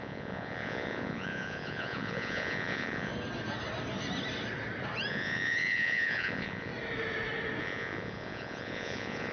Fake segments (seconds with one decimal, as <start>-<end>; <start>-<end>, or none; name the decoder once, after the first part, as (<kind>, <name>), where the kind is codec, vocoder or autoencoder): 0.0-3.1 (vocoder, Vocos); 5.1-6.7; 7.6-9.3

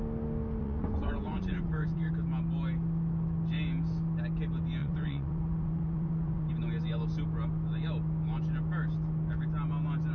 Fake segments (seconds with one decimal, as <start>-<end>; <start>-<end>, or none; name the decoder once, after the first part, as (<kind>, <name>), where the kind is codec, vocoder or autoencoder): 0.6-2.1 (vocoder, Vocos); 4.8-6.5